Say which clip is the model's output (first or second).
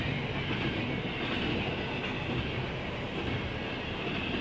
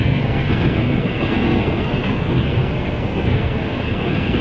second